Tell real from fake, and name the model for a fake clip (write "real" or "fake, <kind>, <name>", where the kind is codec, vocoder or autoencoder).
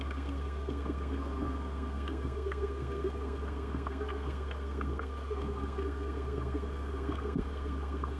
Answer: fake, codec, SNAC